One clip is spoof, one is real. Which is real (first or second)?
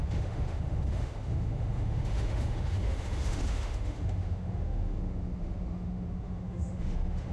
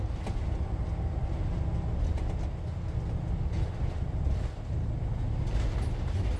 second